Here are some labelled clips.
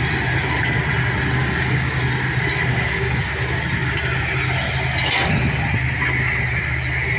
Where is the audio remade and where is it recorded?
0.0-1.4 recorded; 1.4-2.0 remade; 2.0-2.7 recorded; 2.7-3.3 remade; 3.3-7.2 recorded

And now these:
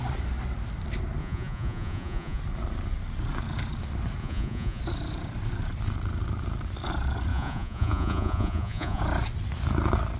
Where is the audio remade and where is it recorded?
0.0-1.2 recorded; 1.2-2.4 remade; 2.4-4.2 recorded; 4.2-4.8 remade; 4.8-7.3 recorded; 7.3-9.0 remade; 9.0-10.2 recorded

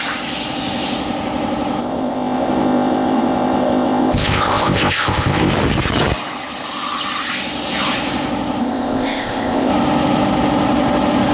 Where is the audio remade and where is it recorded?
0.0-1.8 recorded; 1.8-5.5 remade; 5.5-8.6 recorded; 8.6-9.7 remade; 9.7-11.3 recorded

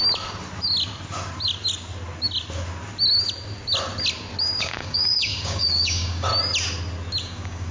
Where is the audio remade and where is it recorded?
0.0-4.6 recorded; 4.6-6.3 remade; 6.3-7.2 recorded; 7.2-7.7 remade

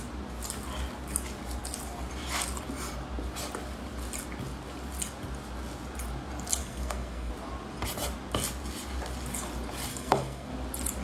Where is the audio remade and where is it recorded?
0.0-6.6 recorded; 6.6-7.3 remade; 7.3-9.9 recorded; 9.9-10.5 remade; 10.5-11.0 recorded

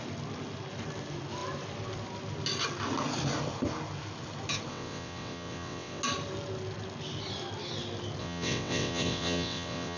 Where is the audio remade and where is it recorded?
0.0-4.7 recorded; 4.7-6.0 remade; 6.0-8.2 recorded; 8.2-10.0 remade